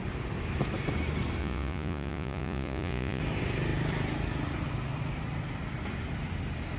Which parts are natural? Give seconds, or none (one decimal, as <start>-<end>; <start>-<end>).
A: 0.0-1.4; 3.2-6.8